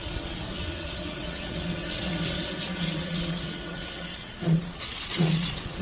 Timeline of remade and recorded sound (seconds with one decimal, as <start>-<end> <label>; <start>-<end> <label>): 0.0-5.8 remade